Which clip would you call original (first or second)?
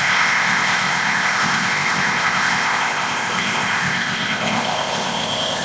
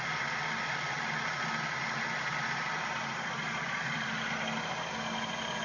second